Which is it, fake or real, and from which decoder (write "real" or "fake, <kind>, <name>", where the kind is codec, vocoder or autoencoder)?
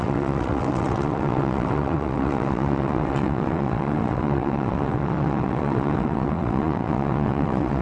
fake, vocoder, WaveNeXt